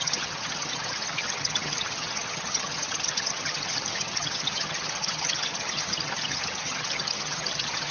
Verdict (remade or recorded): remade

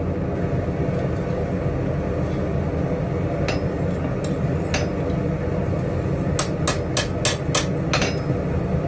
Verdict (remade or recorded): recorded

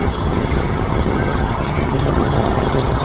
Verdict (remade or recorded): remade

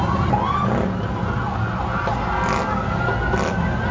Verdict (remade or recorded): recorded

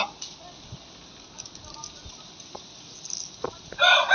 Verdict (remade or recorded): recorded